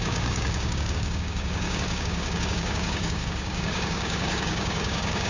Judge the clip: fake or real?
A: fake